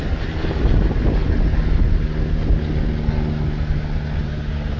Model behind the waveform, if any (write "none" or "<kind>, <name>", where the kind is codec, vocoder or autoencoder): none